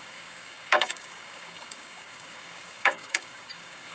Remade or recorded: remade